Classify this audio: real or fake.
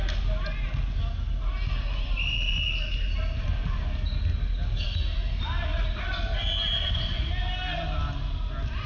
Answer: real